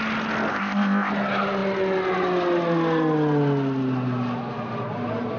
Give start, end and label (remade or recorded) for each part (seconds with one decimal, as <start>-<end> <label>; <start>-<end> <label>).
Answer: 0.0-0.5 recorded; 0.5-1.1 remade; 1.1-5.4 recorded